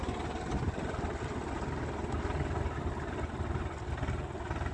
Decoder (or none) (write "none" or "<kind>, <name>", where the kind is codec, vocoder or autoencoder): none